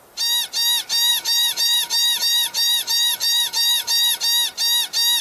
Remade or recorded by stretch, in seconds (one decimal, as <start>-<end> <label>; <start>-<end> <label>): 0.0-1.1 recorded; 1.1-4.2 remade; 4.2-5.2 recorded